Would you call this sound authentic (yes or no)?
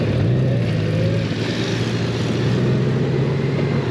yes